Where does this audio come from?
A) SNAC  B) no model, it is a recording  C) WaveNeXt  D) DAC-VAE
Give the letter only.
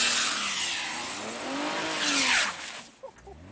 B